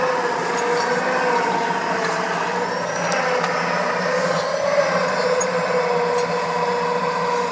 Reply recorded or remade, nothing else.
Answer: recorded